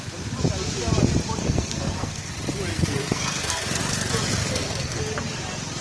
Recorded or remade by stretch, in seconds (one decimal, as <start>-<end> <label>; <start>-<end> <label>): 0.0-1.4 recorded; 1.4-2.3 remade; 2.3-2.7 recorded; 2.7-3.8 remade; 3.8-4.4 recorded; 4.4-5.0 remade; 5.0-5.8 recorded